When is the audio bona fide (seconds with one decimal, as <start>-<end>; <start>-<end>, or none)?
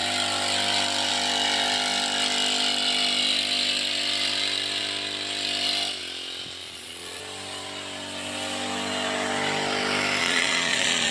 0.0-6.6; 7.2-10.2